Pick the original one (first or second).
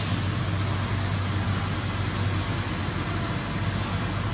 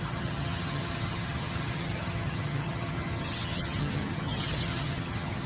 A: first